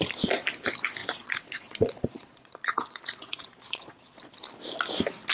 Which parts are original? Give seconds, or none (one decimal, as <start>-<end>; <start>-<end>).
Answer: 0.0-1.0; 4.2-5.3